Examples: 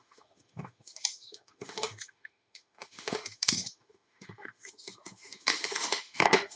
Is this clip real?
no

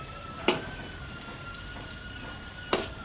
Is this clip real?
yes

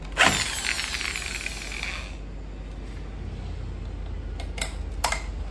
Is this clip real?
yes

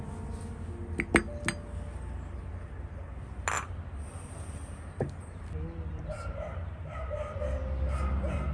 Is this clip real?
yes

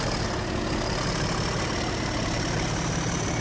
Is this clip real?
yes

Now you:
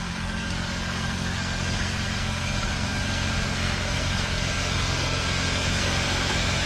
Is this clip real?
no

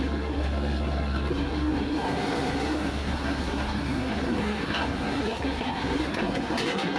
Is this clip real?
no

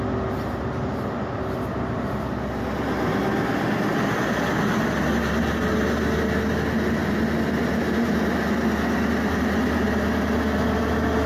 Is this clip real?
yes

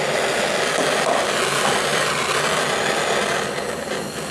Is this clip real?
yes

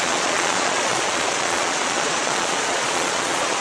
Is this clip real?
no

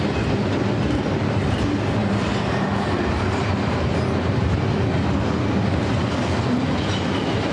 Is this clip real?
yes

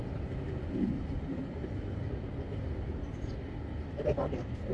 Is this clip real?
yes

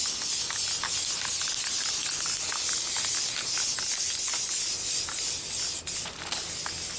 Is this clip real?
yes